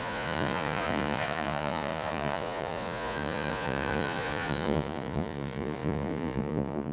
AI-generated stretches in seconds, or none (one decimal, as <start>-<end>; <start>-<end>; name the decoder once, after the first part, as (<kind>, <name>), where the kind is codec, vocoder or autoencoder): 0.0-6.9 (vocoder, Vocos)